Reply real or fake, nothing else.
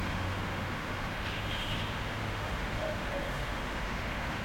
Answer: fake